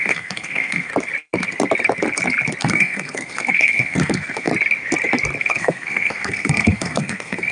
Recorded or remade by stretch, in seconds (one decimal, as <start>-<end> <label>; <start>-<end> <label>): 0.0-0.9 remade; 0.9-2.6 recorded; 2.6-4.5 remade; 4.5-5.4 recorded; 5.4-7.5 remade